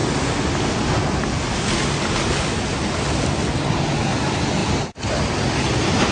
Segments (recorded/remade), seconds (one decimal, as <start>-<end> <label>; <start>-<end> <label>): 0.0-6.1 recorded